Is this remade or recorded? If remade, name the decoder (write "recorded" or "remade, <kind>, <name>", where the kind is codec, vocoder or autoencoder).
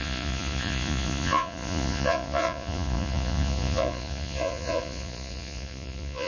remade, vocoder, Vocos